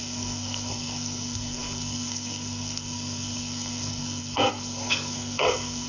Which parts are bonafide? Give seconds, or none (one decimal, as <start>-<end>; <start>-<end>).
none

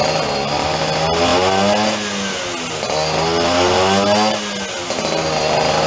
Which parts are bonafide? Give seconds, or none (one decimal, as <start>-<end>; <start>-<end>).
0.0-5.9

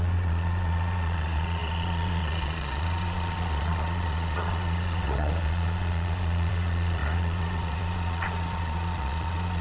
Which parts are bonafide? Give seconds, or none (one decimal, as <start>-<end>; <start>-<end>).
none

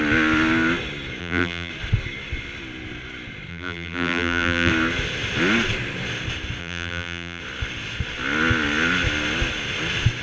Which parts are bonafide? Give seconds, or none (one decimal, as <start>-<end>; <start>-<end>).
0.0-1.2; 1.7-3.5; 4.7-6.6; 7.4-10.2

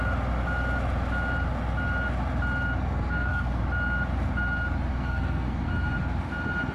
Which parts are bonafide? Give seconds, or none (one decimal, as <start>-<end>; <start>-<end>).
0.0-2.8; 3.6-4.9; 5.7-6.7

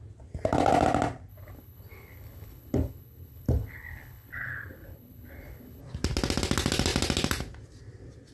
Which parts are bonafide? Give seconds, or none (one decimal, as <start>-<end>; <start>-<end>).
0.0-1.3; 5.8-8.3